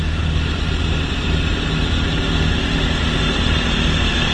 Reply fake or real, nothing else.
real